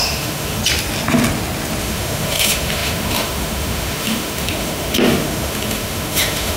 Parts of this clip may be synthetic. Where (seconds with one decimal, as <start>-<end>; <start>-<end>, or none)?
0.0-0.6; 1.8-6.6